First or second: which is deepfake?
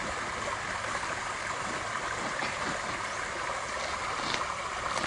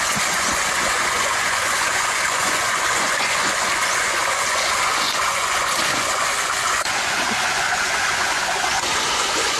second